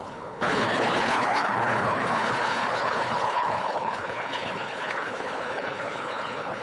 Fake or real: fake